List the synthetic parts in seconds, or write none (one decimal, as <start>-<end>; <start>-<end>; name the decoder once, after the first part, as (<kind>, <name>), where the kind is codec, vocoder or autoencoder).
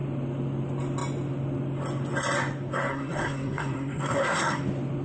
2.9-4.6 (codec, SNAC)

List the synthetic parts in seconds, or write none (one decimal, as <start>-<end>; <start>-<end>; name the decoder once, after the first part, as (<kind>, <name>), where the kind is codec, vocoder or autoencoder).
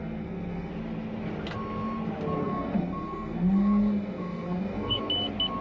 0.0-0.7 (codec, SNAC); 2.4-5.0